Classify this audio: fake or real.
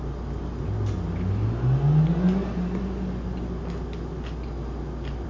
real